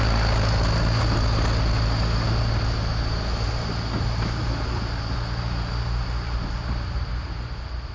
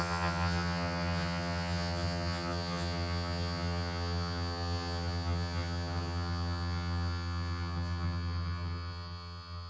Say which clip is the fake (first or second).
second